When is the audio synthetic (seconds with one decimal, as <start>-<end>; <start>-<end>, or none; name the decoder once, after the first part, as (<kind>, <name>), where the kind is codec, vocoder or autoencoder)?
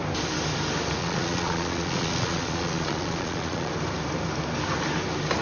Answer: 1.0-3.7 (vocoder, Vocos)